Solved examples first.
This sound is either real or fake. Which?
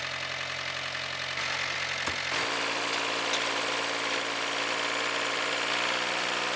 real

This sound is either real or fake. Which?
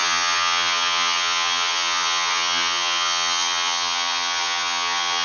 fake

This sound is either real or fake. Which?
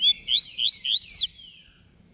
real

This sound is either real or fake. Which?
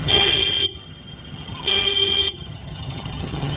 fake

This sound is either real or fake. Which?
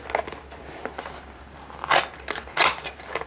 real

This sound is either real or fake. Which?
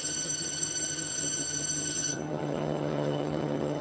fake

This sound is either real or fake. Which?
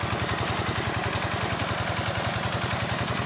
real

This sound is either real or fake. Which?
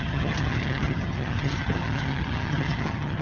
fake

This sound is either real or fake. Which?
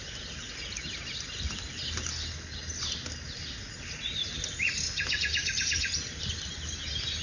real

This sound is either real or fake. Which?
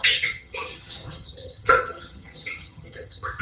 fake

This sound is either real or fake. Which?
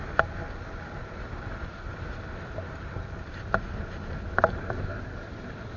real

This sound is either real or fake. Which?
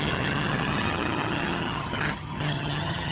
fake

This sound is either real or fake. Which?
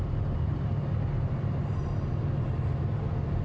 real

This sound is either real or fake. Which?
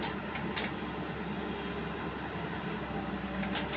real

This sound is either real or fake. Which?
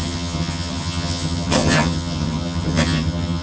fake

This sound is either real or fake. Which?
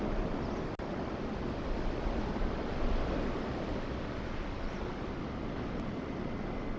real